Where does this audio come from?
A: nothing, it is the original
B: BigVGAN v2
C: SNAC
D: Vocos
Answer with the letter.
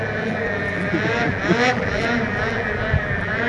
B